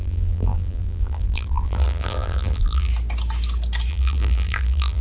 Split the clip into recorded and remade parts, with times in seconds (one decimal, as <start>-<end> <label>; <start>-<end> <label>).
0.0-2.9 remade; 2.9-3.9 recorded; 3.9-5.0 remade